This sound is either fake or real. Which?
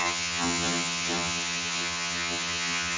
fake